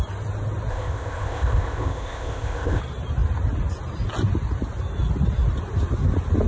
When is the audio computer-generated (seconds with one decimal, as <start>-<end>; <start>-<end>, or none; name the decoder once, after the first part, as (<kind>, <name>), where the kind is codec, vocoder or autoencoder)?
0.7-2.8 (codec, ZipCodec)